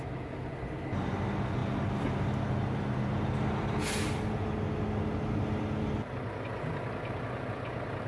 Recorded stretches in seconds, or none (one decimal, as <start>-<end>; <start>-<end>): 0.0-8.1